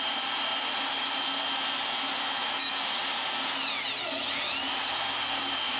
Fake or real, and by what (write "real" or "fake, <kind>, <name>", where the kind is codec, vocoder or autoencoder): real